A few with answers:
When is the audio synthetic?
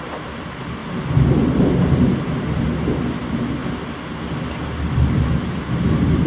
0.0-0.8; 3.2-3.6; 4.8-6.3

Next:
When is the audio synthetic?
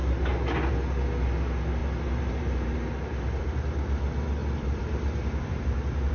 1.8-3.4; 4.4-6.1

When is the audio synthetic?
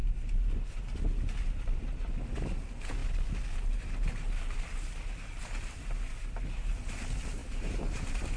7.4-8.4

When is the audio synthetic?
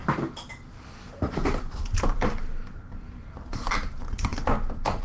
3.0-5.0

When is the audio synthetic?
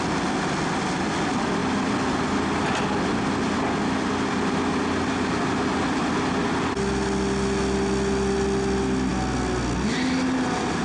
none